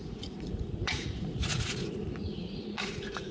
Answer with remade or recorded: remade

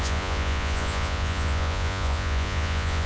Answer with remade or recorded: remade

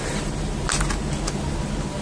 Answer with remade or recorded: recorded